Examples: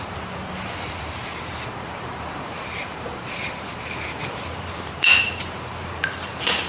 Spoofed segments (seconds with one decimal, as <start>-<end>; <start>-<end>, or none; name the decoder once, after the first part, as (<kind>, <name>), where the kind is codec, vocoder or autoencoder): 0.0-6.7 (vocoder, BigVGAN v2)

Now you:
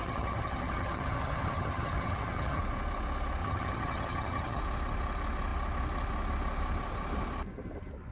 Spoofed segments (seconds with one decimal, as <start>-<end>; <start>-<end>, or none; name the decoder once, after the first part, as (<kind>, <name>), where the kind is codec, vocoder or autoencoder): 0.0-2.6 (vocoder, HiFi-GAN); 3.4-4.6

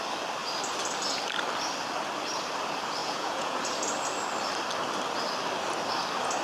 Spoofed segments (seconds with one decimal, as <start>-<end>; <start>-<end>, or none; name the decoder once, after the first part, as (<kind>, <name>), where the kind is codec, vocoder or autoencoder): 3.0-3.6 (vocoder, Vocos)

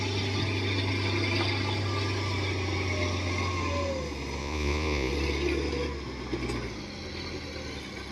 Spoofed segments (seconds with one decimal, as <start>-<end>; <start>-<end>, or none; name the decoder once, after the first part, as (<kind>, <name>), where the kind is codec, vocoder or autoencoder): 4.4-5.1 (vocoder, Vocos)

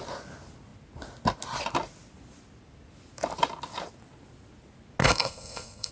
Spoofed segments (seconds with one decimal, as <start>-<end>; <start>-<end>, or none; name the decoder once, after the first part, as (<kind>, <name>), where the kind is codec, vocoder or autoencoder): 5.0-5.9 (codec, SNAC)

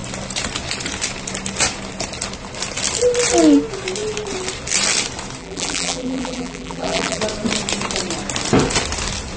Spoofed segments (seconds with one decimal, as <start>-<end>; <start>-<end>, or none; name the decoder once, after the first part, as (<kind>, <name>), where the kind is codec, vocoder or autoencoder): 5.4-7.2 (vocoder, BigVGAN v2)

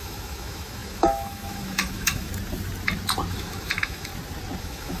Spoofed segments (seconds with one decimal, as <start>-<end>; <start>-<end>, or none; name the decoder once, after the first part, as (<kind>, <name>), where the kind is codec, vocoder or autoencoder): 0.0-2.3 (autoencoder, DAC-VAE); 3.3-4.1; 4.6-5.0

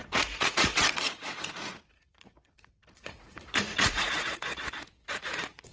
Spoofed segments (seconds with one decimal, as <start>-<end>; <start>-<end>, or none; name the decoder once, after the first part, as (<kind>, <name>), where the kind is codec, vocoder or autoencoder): 0.0-4.5 (vocoder, Vocos); 5.1-5.7